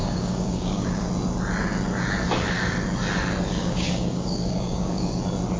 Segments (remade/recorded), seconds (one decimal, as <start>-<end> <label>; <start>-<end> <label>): 0.0-1.1 remade; 1.1-3.6 recorded; 3.6-5.1 remade; 5.1-5.6 recorded

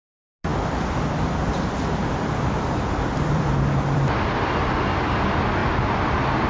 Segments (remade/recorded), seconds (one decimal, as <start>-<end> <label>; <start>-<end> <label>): 0.0-0.5 recorded; 0.5-1.3 remade; 1.3-2.0 recorded; 2.0-4.5 remade; 4.5-6.5 recorded

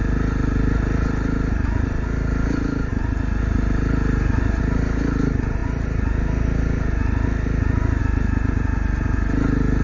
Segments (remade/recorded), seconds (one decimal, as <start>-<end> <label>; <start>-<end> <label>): 0.0-9.8 recorded

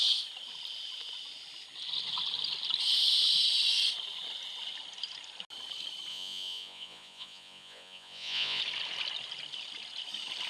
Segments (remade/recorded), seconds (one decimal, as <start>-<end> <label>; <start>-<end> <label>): 0.0-6.1 recorded; 6.1-8.6 remade; 8.6-10.5 recorded

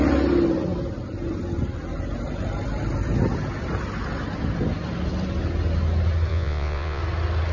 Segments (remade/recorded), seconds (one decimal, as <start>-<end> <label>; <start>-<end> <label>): 0.0-6.3 recorded; 6.3-7.0 remade; 7.0-7.5 recorded

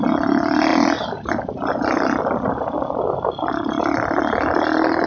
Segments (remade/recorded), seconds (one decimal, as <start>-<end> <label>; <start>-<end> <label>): 0.0-5.1 recorded